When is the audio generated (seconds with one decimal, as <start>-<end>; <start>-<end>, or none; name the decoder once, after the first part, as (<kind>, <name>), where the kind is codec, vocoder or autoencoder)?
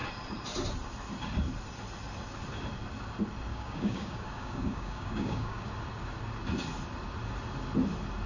3.5-5.7 (codec, DAC)